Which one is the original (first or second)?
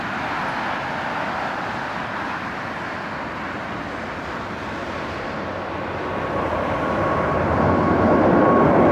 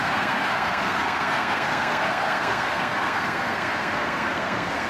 first